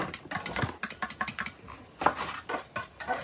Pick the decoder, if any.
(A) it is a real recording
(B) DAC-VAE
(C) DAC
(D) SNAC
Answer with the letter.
A